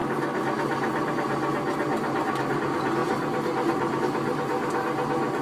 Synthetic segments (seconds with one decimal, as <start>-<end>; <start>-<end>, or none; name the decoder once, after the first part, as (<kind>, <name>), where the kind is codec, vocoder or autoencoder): none